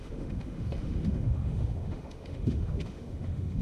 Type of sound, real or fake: fake